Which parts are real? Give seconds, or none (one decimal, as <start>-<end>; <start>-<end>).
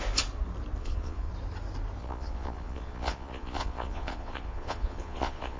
0.0-0.8; 1.3-2.0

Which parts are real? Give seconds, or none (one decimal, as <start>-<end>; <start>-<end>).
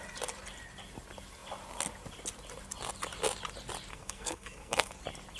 0.0-3.9; 5.0-5.4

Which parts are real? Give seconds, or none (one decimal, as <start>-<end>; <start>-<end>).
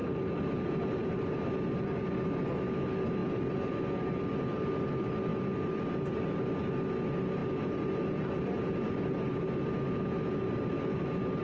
2.0-5.3; 6.3-7.4; 9.7-11.4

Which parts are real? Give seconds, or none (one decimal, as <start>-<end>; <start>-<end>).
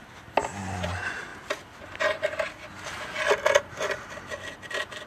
0.0-5.1